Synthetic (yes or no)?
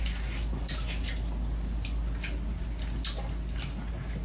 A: no